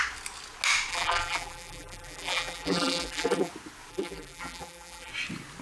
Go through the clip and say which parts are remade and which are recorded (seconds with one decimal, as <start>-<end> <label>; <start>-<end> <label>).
0.0-0.9 recorded; 0.9-3.5 remade; 3.5-3.9 recorded; 3.9-5.1 remade; 5.1-5.6 recorded